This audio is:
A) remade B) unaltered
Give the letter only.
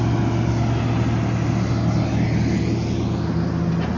B